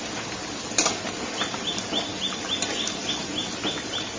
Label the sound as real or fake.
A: real